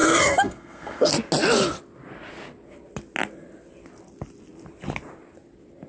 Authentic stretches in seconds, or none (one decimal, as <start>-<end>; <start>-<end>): 1.1-5.9